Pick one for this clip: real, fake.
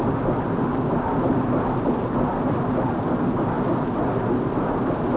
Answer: real